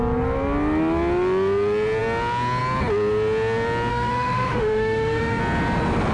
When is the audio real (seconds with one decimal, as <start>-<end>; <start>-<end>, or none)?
0.0-3.9; 5.4-6.1